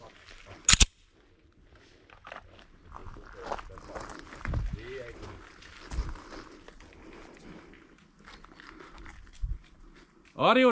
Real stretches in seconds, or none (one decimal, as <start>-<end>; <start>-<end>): 0.0-10.7